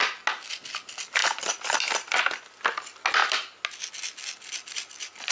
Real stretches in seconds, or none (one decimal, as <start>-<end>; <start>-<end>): 0.0-5.3